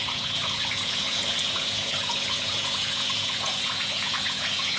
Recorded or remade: remade